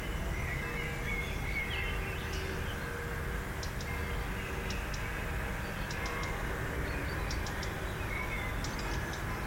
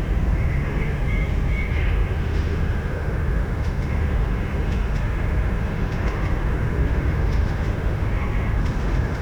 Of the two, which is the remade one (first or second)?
second